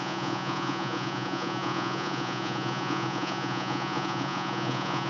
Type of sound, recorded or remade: remade